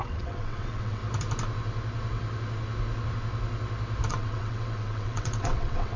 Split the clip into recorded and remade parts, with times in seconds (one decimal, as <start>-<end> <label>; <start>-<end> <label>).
0.0-1.0 remade; 1.0-4.1 recorded; 4.1-6.0 remade